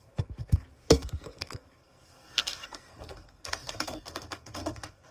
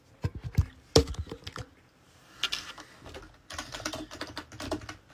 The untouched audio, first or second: second